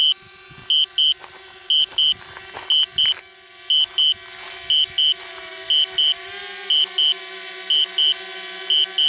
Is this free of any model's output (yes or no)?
yes